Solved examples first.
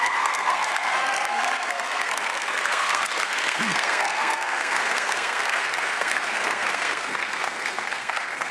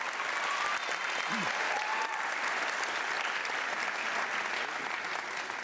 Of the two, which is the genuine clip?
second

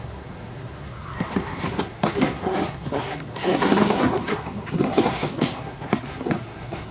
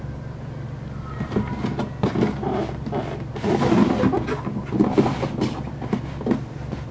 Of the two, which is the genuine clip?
second